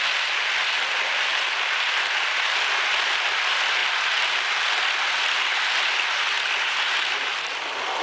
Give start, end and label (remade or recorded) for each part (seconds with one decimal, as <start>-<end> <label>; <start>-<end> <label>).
0.0-8.0 recorded